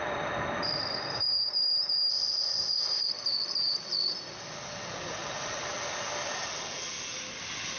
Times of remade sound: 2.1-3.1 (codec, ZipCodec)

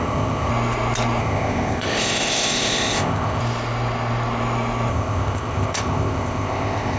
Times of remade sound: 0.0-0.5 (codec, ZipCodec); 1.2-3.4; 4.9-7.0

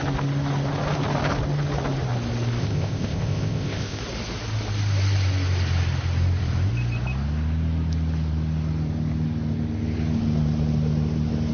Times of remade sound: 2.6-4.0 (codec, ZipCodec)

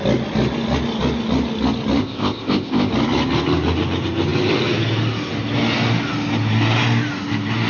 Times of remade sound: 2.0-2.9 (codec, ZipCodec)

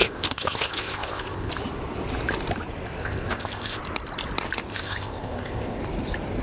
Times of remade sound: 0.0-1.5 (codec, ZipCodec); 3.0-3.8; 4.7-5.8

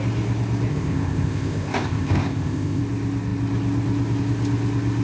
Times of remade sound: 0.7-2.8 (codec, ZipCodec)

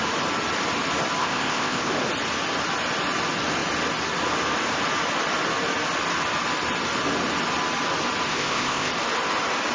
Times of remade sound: 1.2-1.9 (codec, ZipCodec); 8.3-8.9